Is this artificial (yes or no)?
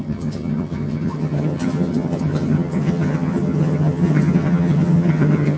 yes